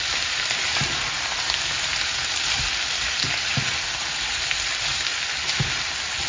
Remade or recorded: recorded